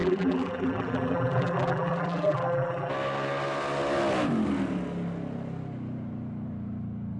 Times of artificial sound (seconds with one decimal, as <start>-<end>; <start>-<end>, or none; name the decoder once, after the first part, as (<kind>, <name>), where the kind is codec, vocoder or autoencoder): 0.0-2.9 (vocoder, BigVGAN v2)